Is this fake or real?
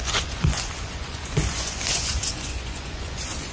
fake